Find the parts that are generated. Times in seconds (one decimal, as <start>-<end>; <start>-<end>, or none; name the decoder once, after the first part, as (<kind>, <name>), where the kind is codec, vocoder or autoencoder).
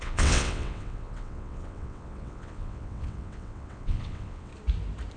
0.0-4.5 (vocoder, WaveNeXt)